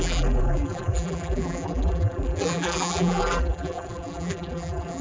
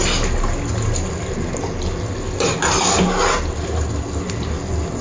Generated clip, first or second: first